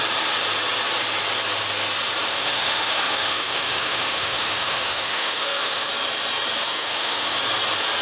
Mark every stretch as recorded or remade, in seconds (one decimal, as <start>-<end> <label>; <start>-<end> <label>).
0.0-2.3 recorded; 2.3-5.9 remade; 5.9-6.7 recorded; 6.7-7.4 remade; 7.4-8.0 recorded